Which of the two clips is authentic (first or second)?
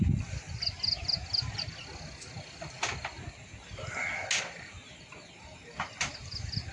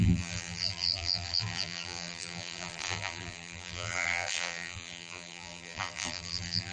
first